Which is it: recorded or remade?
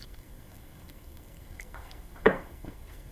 remade